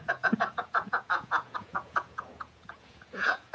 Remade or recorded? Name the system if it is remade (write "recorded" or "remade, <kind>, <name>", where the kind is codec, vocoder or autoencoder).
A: remade, vocoder, Vocos